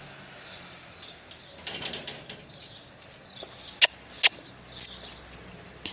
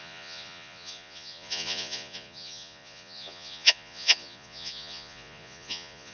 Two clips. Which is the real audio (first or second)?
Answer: first